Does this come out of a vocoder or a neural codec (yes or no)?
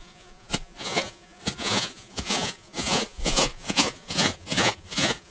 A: yes